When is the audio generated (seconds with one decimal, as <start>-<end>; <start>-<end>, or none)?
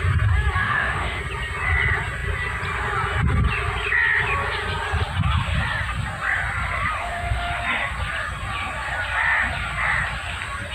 0.6-1.2; 7.0-7.5